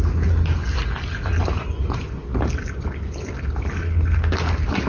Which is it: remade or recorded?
recorded